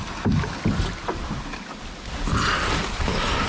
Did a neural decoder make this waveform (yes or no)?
no